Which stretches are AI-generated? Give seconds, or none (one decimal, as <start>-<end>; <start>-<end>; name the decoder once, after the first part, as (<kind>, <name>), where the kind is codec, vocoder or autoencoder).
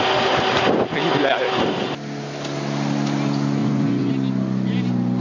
3.6-4.1 (vocoder, Vocos)